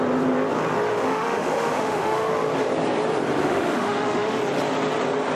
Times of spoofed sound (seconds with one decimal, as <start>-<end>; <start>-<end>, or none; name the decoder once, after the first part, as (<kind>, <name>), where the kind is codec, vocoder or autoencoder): 0.9-2.3 (autoencoder, DAC-VAE); 3.4-4.4